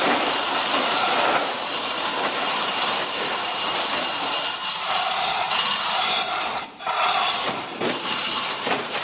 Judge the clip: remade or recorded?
remade